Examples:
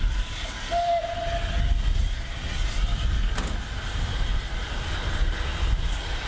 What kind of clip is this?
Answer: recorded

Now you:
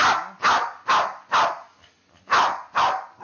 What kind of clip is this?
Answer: recorded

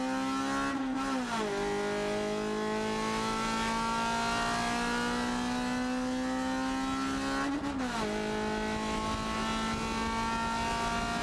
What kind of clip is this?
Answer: recorded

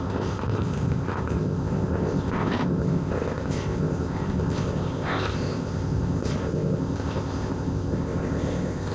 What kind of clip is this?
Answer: remade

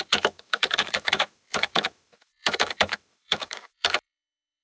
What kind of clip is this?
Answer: remade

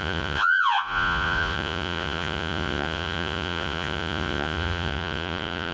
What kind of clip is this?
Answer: remade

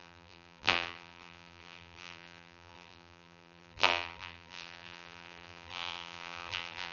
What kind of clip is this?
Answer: remade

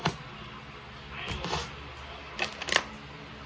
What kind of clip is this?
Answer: recorded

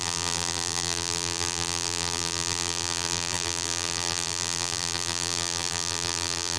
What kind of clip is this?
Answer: remade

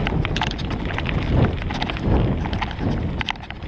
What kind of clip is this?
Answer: recorded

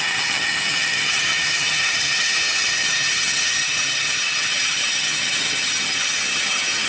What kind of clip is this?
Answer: remade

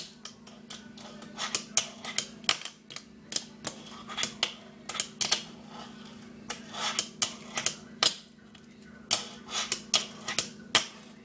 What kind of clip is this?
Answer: recorded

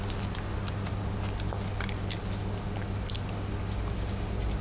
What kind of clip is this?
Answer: recorded